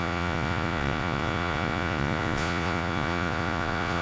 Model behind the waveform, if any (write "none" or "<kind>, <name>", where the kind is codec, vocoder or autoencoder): vocoder, Vocos